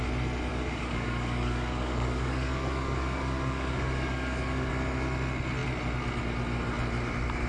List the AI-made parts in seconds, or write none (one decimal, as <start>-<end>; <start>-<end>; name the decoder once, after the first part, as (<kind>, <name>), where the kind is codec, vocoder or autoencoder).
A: 0.5-4.7 (codec, DAC)

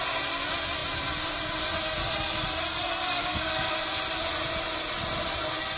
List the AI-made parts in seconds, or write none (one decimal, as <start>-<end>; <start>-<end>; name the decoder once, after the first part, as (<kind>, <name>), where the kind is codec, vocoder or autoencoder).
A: 3.2-3.7 (codec, DAC)